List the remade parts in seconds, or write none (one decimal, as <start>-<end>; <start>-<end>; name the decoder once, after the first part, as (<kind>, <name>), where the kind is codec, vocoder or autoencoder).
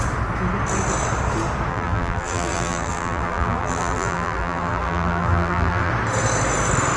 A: 1.7-5.9 (vocoder, BigVGAN v2)